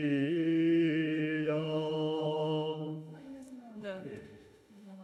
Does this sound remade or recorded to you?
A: remade